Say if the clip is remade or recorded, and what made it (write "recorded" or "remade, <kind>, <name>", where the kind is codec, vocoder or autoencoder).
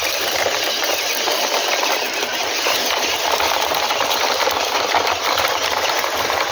remade, vocoder, BigVGAN v2